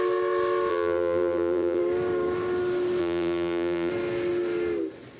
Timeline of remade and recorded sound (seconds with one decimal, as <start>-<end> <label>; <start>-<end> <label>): 0.0-0.7 recorded; 0.7-1.8 remade; 1.8-3.0 recorded; 3.0-3.9 remade; 3.9-5.2 recorded